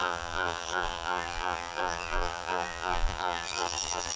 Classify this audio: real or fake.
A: fake